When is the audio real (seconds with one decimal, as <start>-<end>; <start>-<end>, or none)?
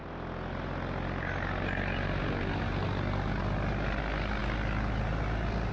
0.0-5.7